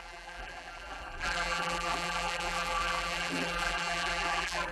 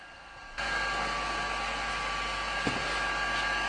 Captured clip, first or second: second